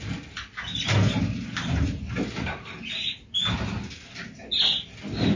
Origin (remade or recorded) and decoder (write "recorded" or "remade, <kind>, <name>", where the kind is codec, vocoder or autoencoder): recorded